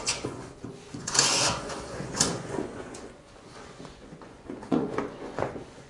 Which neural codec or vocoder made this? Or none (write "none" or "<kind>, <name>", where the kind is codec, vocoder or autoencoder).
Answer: vocoder, Vocos